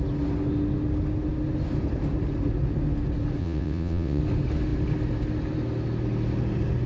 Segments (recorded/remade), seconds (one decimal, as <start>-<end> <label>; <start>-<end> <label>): 0.0-3.4 recorded; 3.4-4.2 remade; 4.2-6.9 recorded